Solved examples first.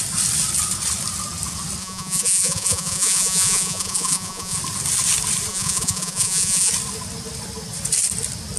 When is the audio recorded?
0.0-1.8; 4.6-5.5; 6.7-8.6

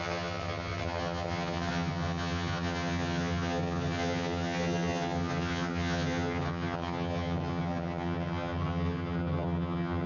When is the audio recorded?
none

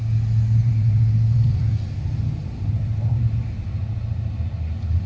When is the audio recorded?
0.0-0.6; 1.6-2.4; 3.2-5.1

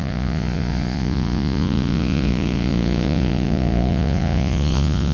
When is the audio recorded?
none

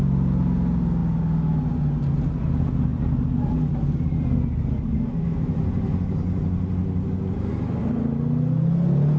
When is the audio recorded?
0.0-9.2

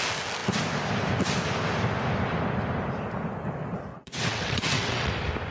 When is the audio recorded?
0.0-3.9; 5.1-5.5

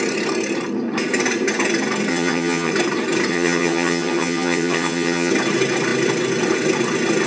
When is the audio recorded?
0.0-2.1; 2.7-3.3; 5.3-7.3